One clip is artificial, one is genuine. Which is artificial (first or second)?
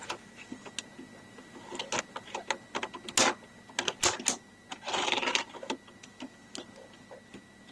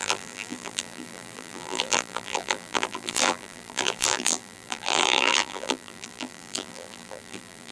second